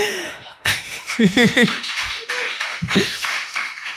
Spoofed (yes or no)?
yes